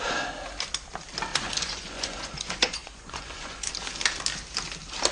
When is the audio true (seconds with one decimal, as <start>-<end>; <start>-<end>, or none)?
0.0-1.3; 3.7-5.1